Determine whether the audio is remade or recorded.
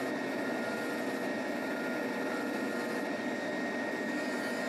recorded